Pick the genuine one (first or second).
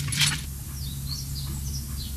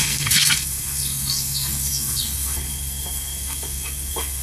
first